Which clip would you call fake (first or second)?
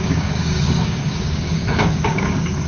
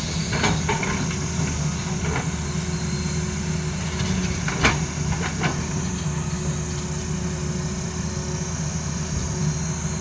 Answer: first